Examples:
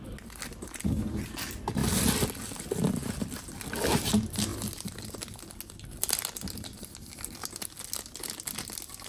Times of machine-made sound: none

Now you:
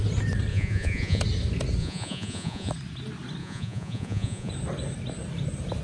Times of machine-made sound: 0.5-1.2 (vocoder, Vocos); 1.8-2.7; 3.4-4.5

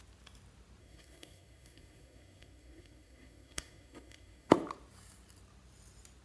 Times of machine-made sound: 0.8-4.5 (codec, SNAC)

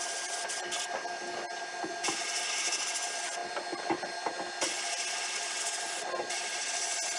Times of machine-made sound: none

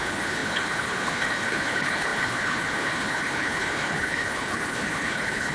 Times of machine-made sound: 0.0-5.5 (codec, HILCodec)